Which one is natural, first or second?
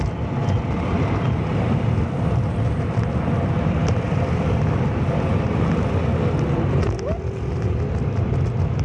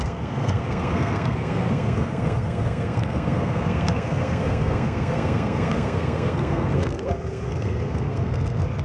first